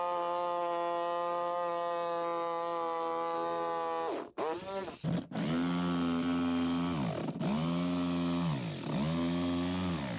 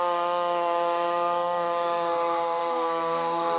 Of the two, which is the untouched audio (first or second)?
first